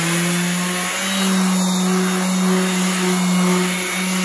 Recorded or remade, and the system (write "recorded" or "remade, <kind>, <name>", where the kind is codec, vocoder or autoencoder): recorded